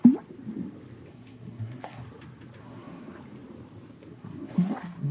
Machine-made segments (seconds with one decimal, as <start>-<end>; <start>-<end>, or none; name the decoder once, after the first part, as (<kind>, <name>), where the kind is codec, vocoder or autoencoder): 1.1-2.0 (codec, SNAC); 2.6-3.2; 4.1-5.1